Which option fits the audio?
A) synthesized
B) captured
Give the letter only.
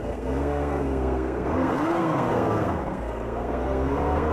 A